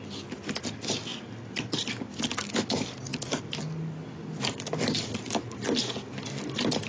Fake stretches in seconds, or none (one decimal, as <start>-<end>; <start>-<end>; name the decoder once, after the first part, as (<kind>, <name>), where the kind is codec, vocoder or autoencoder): none